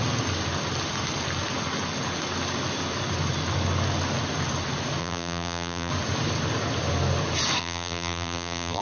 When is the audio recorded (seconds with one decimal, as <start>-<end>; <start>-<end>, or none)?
0.0-5.0; 5.9-7.6